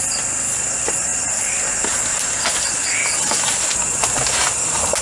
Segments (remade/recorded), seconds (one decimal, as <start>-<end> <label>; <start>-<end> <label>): 0.0-5.0 recorded